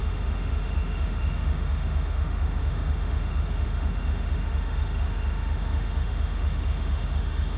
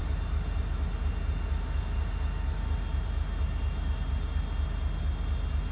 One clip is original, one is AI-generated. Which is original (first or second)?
second